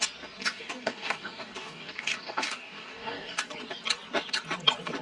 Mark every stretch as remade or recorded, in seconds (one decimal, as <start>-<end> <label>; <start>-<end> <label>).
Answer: 0.0-0.4 recorded; 0.4-3.4 remade; 3.4-5.0 recorded